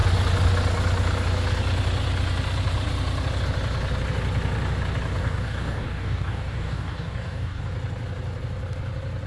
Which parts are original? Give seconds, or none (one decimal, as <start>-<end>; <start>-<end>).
0.0-5.2; 7.6-9.3